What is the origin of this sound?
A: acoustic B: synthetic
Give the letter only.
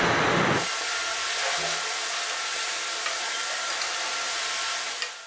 A